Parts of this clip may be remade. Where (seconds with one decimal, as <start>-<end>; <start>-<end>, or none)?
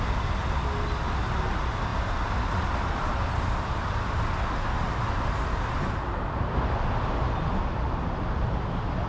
none